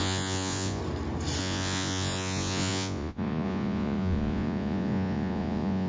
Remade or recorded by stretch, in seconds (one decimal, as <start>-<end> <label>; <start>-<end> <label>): 0.0-0.8 remade; 0.8-1.4 recorded; 1.4-5.9 remade

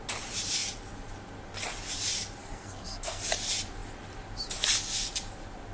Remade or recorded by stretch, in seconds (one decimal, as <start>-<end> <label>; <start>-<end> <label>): 0.0-2.4 recorded; 2.4-3.2 remade; 3.2-5.7 recorded